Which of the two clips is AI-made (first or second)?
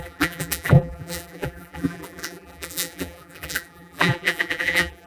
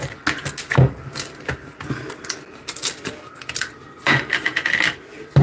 first